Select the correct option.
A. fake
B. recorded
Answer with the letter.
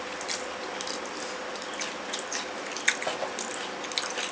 B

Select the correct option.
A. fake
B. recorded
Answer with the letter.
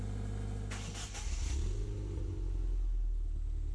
B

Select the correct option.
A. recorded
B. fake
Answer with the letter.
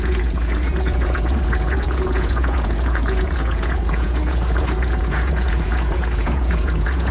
B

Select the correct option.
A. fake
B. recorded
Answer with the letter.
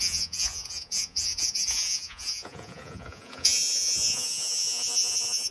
A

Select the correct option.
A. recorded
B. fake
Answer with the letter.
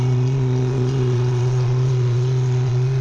B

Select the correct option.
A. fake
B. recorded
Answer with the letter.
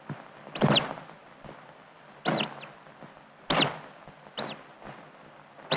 B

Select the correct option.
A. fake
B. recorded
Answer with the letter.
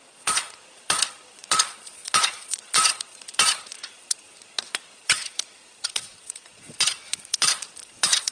A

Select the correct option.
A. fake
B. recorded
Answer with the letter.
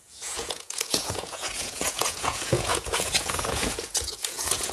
A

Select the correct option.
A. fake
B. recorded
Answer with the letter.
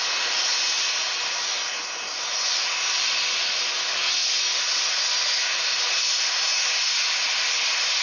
B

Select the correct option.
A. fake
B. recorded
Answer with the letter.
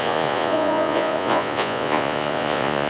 A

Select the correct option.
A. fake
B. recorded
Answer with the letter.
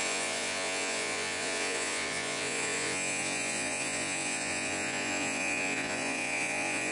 A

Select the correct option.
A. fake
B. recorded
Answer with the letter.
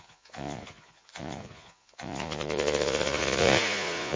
A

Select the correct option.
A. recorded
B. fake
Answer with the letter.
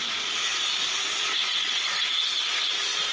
A